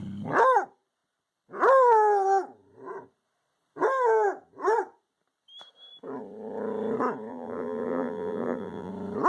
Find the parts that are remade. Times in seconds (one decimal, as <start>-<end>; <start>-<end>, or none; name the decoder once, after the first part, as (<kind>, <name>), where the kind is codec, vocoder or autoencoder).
7.3-8.9 (vocoder, BigVGAN v2)

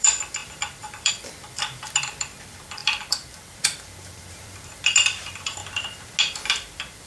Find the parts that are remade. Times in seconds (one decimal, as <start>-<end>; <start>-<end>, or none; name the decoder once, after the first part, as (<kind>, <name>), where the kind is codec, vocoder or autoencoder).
0.0-5.6 (vocoder, BigVGAN v2); 6.5-7.1

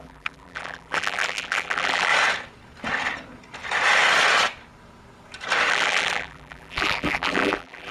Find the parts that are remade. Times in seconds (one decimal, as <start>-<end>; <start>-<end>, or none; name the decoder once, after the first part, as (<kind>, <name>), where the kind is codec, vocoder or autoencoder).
0.0-2.1 (vocoder, BigVGAN v2); 5.7-7.9

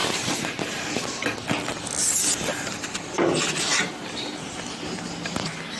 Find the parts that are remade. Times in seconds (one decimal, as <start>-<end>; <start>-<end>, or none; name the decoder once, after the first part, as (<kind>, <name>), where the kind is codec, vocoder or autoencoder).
0.0-1.0 (vocoder, BigVGAN v2); 3.7-4.6